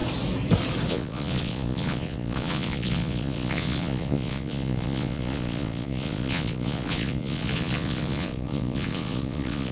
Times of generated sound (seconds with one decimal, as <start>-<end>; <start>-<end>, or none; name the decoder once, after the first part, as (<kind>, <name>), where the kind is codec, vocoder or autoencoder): 0.9-9.7 (vocoder, Vocos)